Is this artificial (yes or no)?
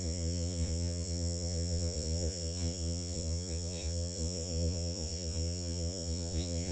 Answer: yes